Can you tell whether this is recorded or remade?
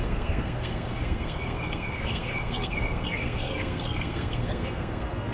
remade